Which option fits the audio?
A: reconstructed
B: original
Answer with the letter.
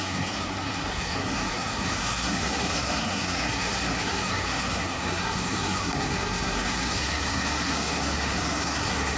A